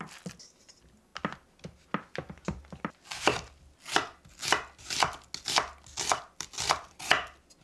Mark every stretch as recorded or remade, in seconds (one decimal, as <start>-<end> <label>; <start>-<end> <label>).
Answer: 0.0-7.6 recorded